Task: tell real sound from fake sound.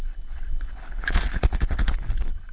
fake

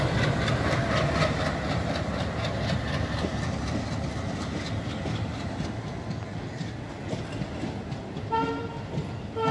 real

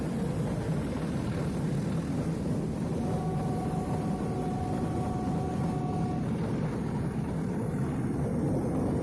real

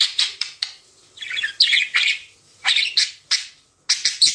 real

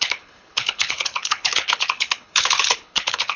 fake